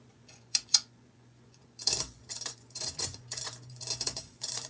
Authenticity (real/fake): fake